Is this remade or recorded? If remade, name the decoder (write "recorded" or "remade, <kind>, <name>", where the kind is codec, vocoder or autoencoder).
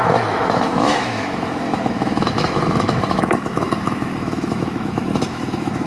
remade, autoencoder, DAC-VAE